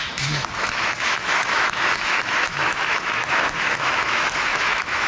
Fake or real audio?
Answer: fake